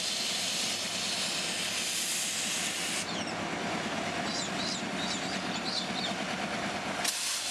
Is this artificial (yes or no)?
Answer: no